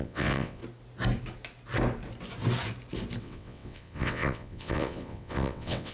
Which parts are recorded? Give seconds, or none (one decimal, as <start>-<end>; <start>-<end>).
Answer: 0.6-3.2